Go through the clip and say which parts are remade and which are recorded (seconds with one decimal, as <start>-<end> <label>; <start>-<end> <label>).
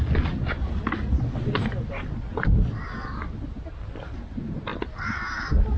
0.0-5.8 recorded